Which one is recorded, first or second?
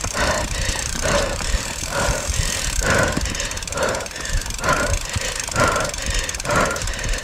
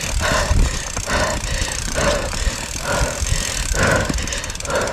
second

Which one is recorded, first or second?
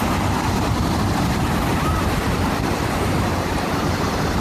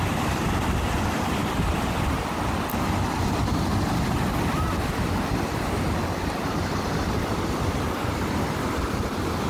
second